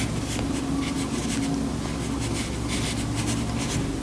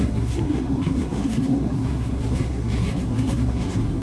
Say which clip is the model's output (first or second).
second